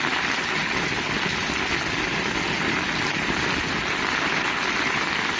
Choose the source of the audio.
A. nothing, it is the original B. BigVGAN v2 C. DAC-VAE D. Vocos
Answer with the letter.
A